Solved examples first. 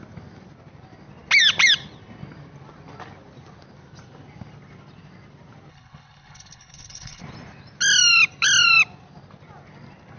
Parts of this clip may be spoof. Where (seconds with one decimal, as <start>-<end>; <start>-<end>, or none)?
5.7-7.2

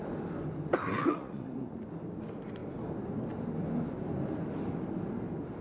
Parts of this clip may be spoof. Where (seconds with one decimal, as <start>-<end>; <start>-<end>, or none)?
0.9-1.8

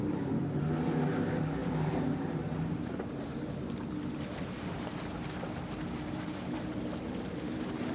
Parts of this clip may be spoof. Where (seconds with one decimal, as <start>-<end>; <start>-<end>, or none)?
0.0-7.9

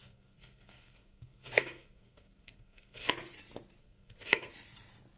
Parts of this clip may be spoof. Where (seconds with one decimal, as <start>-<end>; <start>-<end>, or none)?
0.0-3.1; 3.8-4.5

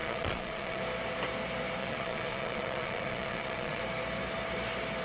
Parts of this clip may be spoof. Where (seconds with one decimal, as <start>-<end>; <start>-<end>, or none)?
0.0-0.8; 1.8-3.8